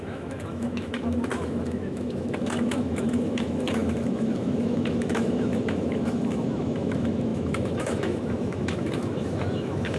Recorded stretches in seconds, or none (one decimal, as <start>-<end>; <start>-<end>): none